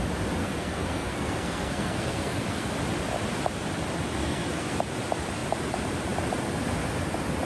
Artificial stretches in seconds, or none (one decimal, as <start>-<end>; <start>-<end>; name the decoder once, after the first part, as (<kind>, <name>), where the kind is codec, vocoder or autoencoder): 0.4-2.7 (codec, SNAC); 4.2-4.8